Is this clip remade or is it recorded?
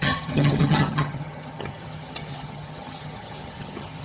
remade